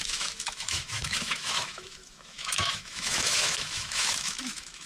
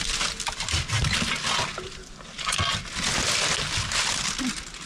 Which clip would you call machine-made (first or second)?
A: first